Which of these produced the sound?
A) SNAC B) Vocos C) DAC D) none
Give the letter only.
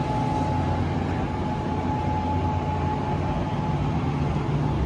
D